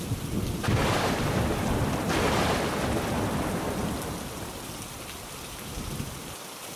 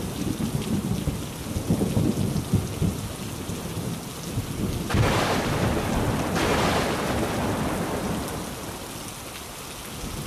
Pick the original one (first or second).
second